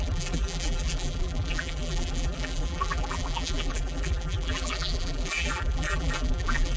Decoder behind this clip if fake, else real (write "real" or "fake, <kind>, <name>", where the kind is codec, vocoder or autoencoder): fake, vocoder, BigVGAN v2